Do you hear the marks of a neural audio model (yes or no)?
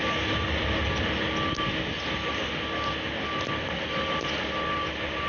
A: no